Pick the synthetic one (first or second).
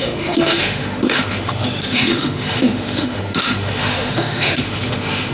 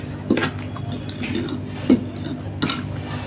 first